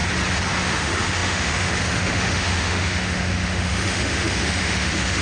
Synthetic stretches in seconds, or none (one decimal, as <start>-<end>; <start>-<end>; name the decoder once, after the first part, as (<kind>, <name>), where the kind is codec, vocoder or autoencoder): 0.6-5.2 (autoencoder, DAC-VAE)